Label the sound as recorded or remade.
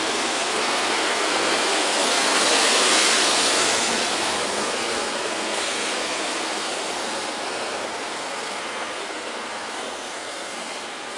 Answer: remade